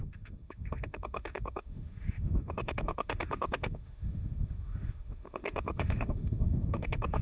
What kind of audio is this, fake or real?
fake